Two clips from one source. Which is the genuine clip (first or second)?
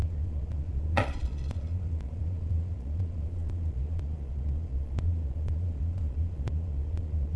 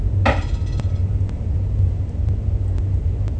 second